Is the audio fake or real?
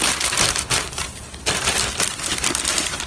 real